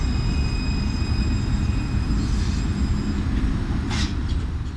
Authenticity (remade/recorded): recorded